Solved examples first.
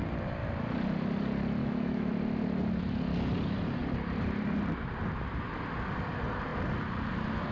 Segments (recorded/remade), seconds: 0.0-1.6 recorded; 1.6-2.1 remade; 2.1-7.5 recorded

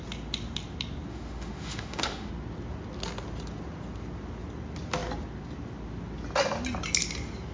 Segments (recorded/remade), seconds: 0.0-1.1 recorded; 1.1-2.3 remade; 2.3-7.5 recorded

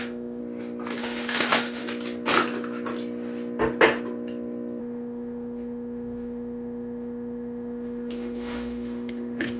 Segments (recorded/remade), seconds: 0.0-0.4 remade; 0.4-1.0 recorded; 1.0-1.8 remade; 1.8-4.8 recorded; 4.8-9.6 remade